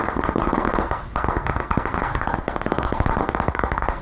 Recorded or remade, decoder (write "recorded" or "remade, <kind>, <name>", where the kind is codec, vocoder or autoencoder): remade, codec, SNAC